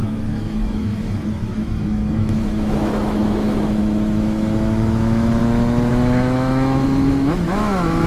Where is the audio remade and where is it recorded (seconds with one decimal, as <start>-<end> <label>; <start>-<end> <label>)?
0.0-5.4 remade; 5.4-5.9 recorded; 5.9-8.1 remade